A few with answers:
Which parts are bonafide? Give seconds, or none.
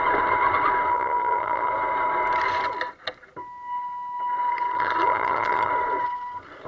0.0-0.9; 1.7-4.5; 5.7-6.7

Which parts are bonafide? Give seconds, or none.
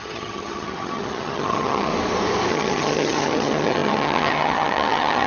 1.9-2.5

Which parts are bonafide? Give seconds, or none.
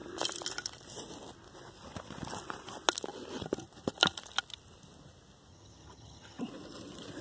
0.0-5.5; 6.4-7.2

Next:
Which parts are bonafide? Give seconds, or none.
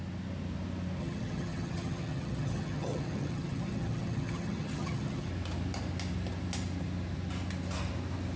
0.0-1.0; 5.3-8.4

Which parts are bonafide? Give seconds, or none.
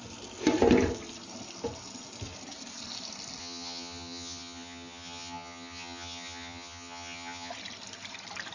0.0-3.4; 7.5-8.5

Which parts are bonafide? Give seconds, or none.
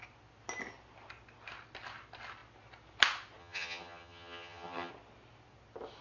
0.0-3.4; 4.9-6.0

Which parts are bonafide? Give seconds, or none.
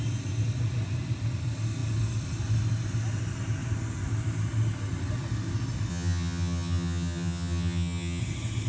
0.0-5.9; 8.2-8.7